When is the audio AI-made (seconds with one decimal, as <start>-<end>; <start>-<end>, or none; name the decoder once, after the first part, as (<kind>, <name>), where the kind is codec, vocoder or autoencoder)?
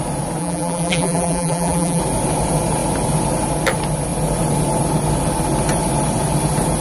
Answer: 0.4-2.0 (vocoder, BigVGAN v2)